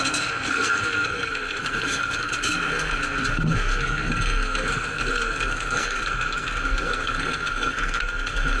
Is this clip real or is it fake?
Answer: fake